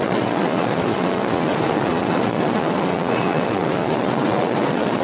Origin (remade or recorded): remade